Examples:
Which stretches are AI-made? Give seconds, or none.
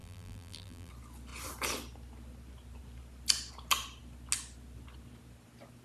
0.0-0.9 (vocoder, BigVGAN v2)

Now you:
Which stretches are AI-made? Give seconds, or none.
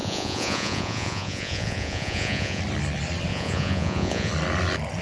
0.0-2.6 (vocoder, Vocos); 3.3-4.3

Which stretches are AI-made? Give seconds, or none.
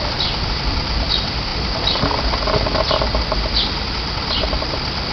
none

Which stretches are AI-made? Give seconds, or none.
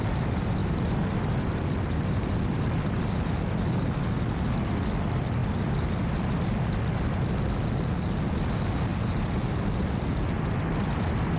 0.6-2.8 (vocoder, BigVGAN v2); 5.4-6.3